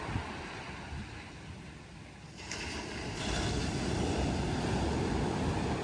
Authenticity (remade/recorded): recorded